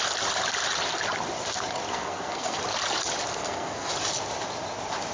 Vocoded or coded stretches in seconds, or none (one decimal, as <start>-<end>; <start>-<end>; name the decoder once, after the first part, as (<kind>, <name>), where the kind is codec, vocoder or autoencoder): 1.9-2.6 (codec, SNAC); 3.3-3.9

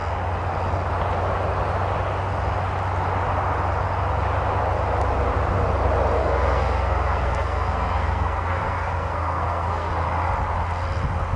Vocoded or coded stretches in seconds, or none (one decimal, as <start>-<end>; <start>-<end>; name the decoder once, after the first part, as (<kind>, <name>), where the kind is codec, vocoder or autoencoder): 6.2-9.9 (codec, SNAC)

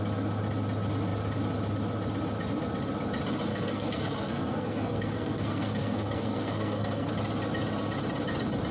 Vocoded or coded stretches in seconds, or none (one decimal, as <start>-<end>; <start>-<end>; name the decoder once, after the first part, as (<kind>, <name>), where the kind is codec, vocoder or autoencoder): 3.5-7.1 (codec, SNAC)

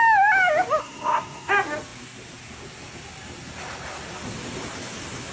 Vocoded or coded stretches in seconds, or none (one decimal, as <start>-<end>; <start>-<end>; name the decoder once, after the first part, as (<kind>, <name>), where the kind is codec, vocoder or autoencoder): 0.8-1.5 (codec, SNAC)

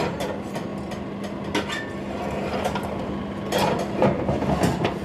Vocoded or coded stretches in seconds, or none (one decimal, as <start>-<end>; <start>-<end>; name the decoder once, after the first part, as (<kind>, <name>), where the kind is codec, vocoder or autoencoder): none

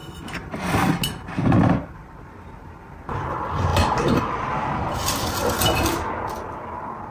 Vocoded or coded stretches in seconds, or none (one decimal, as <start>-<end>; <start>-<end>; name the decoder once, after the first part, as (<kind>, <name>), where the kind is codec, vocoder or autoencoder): none

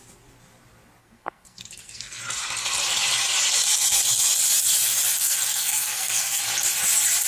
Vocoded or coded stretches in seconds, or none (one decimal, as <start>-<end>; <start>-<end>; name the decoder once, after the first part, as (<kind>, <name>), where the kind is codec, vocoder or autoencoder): 1.0-2.2 (codec, SNAC); 5.2-6.4